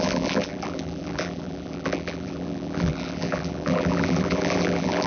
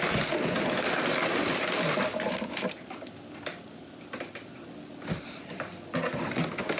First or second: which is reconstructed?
first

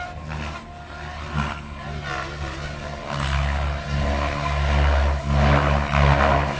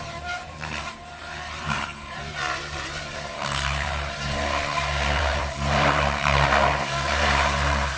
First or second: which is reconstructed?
second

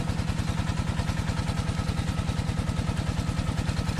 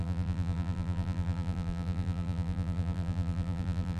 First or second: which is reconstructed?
second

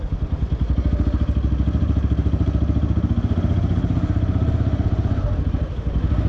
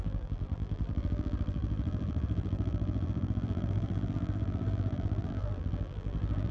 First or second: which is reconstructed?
second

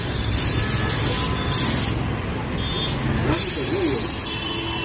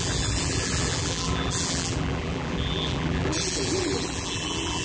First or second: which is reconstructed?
second